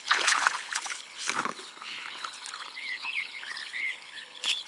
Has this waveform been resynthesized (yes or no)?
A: yes